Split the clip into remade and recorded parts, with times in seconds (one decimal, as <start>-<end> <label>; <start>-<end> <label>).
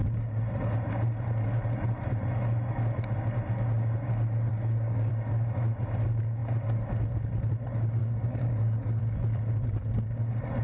0.0-4.5 recorded; 4.5-5.1 remade; 5.1-8.0 recorded; 8.0-9.0 remade; 9.0-10.6 recorded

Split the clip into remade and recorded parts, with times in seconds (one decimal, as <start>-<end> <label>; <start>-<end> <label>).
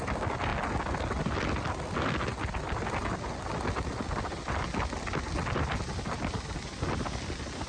0.0-7.7 recorded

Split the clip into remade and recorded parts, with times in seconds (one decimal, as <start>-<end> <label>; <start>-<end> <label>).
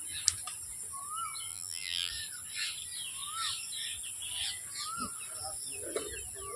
0.0-1.5 recorded; 1.5-2.1 remade; 2.1-6.6 recorded